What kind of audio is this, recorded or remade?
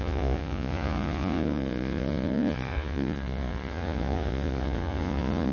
remade